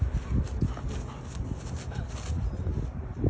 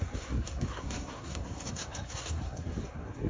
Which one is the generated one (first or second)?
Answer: second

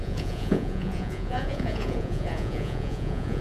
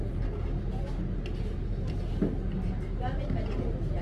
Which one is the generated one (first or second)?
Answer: first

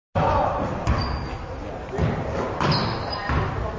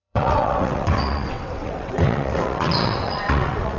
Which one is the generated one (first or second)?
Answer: second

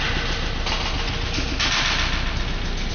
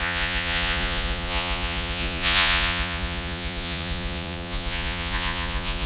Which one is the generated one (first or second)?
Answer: second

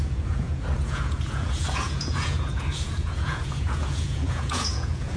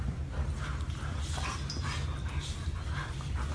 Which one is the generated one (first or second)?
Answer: first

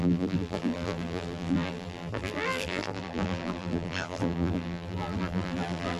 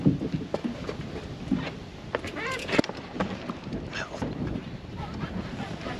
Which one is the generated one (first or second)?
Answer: first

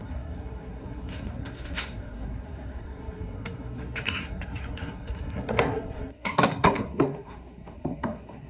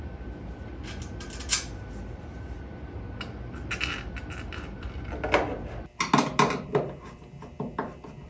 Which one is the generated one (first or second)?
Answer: first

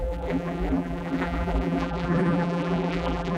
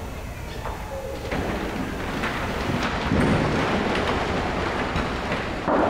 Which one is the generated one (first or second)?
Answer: first